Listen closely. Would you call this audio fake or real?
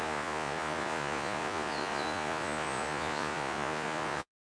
fake